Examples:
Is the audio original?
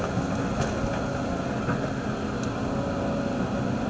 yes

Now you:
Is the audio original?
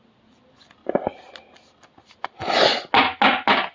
yes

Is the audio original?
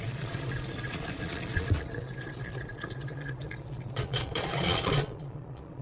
no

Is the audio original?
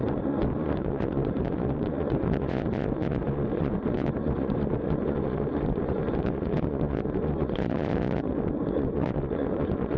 no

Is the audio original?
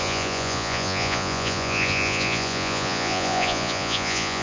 no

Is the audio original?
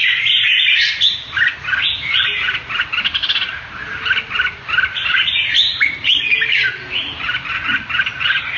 yes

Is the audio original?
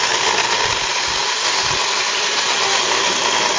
yes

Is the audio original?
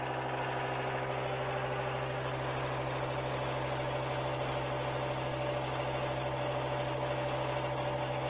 yes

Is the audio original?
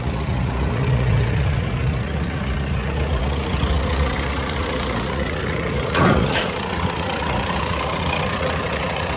no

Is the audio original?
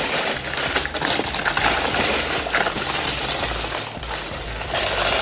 yes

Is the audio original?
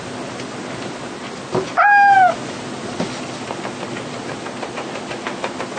yes